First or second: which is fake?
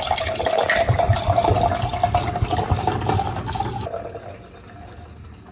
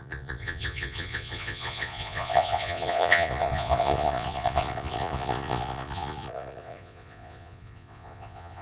second